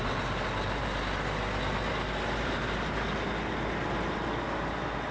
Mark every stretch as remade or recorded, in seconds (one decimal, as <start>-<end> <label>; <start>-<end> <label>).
0.0-5.1 recorded